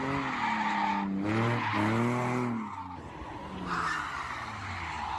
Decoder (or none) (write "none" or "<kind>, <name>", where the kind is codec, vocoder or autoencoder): none